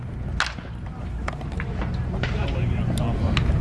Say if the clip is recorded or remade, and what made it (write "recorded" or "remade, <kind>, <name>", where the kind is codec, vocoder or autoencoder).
recorded